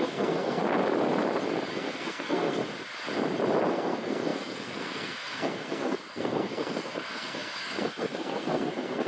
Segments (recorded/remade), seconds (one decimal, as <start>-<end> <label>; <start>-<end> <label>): 0.0-0.6 remade; 0.6-1.7 recorded; 1.7-2.6 remade; 2.6-3.7 recorded; 3.7-9.1 remade

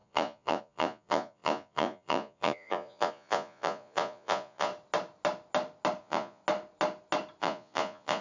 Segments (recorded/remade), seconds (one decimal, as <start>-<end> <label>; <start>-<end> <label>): 0.0-4.7 remade; 4.7-6.0 recorded; 6.0-6.4 remade; 6.4-7.4 recorded; 7.4-8.2 remade

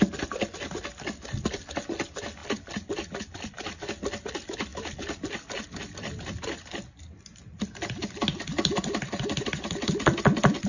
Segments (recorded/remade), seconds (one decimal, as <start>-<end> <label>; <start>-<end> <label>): 0.0-10.7 recorded

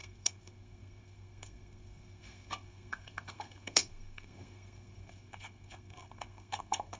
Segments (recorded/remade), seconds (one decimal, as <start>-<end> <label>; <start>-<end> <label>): 0.0-7.0 remade

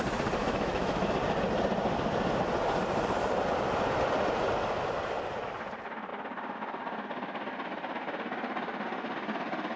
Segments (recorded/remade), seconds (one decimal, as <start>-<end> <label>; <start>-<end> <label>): 0.0-0.4 recorded; 0.4-1.0 remade; 1.0-9.8 recorded